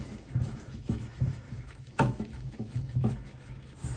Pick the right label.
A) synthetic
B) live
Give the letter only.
A